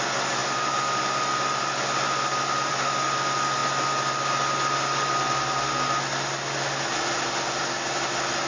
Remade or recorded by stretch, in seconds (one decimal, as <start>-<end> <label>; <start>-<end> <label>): 0.0-8.5 recorded